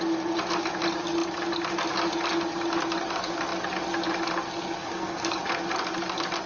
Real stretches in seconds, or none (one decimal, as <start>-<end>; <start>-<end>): 0.0-4.8; 5.4-6.5

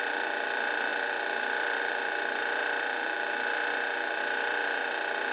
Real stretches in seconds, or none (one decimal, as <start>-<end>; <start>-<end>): 2.6-4.2

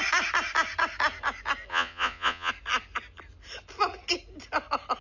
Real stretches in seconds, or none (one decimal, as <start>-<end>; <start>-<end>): 0.0-1.7; 2.5-5.0

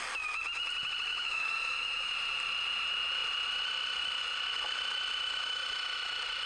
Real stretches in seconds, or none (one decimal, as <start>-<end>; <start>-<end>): 0.0-1.1; 2.1-6.5

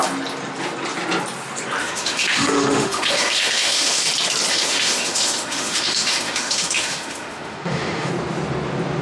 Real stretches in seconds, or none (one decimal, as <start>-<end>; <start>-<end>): 0.0-1.8; 4.1-4.5; 8.1-9.0